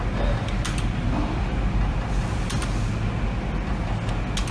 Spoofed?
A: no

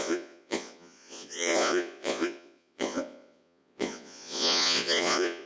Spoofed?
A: yes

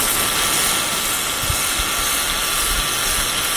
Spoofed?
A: no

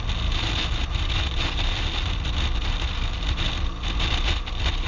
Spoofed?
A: no